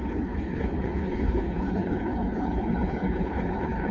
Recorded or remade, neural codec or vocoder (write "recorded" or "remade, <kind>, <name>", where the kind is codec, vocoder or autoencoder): remade, codec, HILCodec